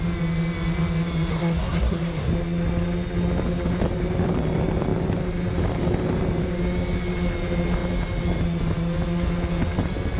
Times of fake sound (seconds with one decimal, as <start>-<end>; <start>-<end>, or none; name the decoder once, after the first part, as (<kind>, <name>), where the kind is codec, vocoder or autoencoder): 1.3-2.3 (codec, SNAC)